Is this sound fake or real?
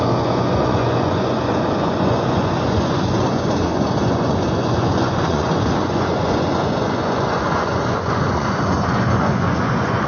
fake